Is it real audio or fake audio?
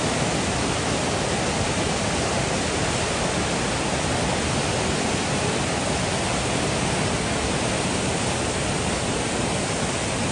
real